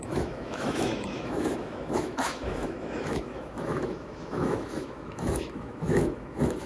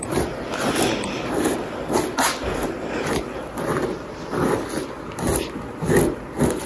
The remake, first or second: first